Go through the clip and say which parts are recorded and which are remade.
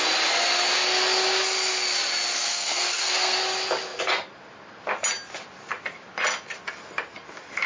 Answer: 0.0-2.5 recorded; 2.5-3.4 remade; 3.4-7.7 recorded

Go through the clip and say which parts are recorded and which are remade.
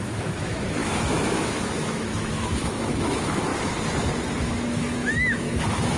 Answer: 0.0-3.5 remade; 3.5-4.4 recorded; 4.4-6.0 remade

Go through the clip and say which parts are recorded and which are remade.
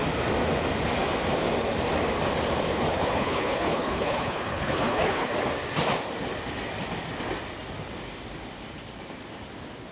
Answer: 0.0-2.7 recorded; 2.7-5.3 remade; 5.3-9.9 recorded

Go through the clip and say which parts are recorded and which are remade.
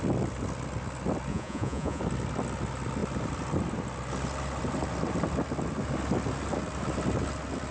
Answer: 0.0-1.3 recorded; 1.3-2.0 remade; 2.0-7.7 recorded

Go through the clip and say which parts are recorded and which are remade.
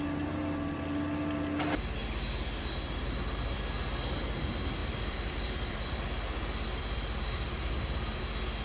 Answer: 0.0-2.0 recorded; 2.0-3.7 remade; 3.7-4.8 recorded; 4.8-8.2 remade; 8.2-8.6 recorded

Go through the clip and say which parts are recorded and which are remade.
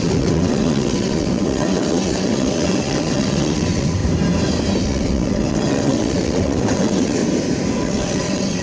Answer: 0.0-4.0 remade; 4.0-4.8 recorded; 4.8-7.2 remade; 7.2-7.8 recorded; 7.8-8.6 remade